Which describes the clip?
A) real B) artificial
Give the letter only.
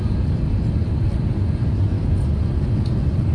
A